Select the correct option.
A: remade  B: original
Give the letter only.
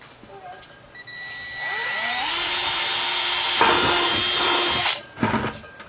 B